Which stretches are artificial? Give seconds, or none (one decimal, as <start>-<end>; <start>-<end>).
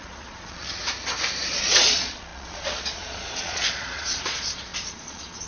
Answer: 0.0-0.8; 1.5-5.5